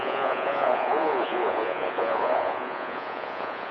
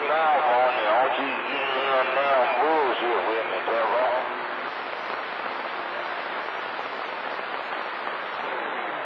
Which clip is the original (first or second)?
second